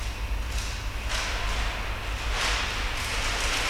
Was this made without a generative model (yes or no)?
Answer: yes